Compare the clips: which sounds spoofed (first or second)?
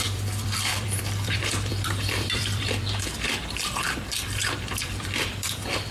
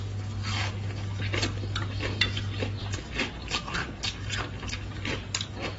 first